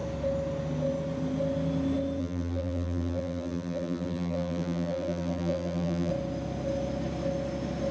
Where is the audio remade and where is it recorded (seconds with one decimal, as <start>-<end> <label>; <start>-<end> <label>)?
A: 0.0-2.2 recorded; 2.2-6.1 remade; 6.1-7.9 recorded